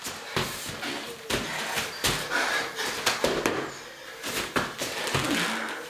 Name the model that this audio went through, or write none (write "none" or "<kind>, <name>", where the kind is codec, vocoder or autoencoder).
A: none